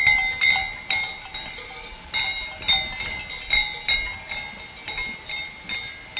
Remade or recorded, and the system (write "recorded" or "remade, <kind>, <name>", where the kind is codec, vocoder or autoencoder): recorded